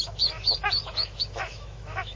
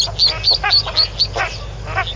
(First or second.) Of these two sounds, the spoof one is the first